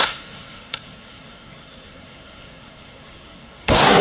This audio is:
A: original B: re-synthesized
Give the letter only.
B